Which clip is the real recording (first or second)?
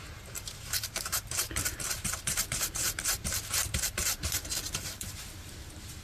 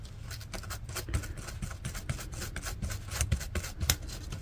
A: second